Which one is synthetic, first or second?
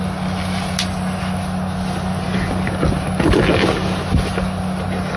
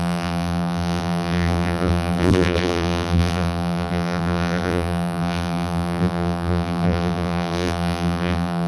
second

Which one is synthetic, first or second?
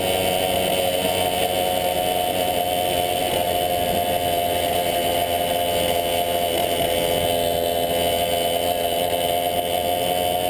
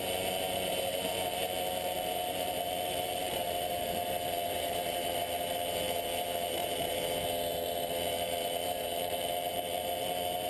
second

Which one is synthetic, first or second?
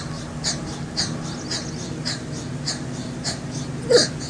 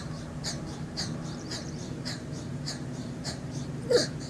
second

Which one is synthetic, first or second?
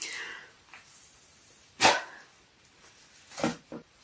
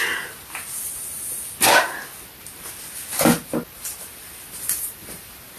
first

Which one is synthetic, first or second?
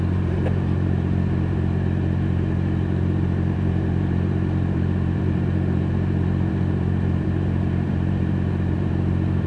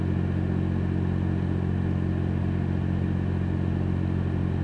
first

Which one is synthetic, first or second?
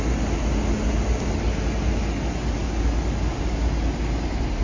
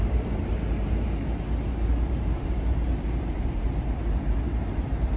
second